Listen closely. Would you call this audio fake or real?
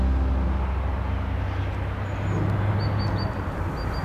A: real